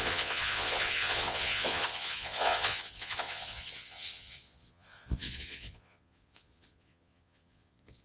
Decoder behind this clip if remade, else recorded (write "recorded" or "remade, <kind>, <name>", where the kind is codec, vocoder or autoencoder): remade, vocoder, Vocos